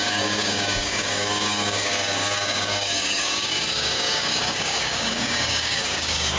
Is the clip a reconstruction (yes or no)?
yes